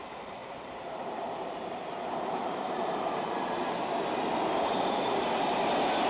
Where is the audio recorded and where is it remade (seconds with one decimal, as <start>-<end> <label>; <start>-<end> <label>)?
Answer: 0.0-0.4 recorded; 0.4-3.9 remade; 3.9-4.5 recorded; 4.5-5.3 remade; 5.3-6.1 recorded